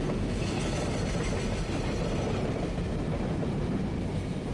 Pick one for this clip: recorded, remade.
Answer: recorded